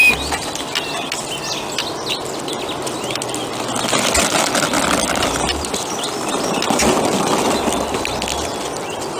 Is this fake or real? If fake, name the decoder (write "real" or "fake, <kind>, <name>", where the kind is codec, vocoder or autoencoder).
real